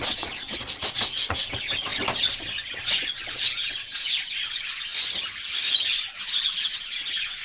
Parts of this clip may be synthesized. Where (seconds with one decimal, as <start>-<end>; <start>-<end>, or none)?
0.0-4.9; 5.9-7.4

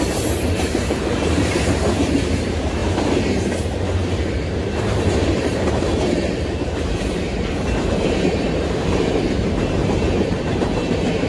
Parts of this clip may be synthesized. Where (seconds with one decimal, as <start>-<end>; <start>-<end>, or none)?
0.0-11.3

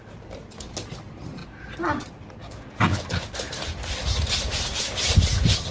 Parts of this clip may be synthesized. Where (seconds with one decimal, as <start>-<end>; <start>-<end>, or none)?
none

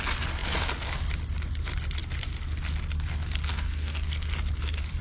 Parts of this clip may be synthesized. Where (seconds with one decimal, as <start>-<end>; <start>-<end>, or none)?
3.4-4.3

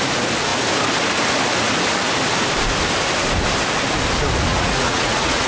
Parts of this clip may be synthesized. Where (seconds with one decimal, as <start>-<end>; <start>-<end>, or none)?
4.5-5.5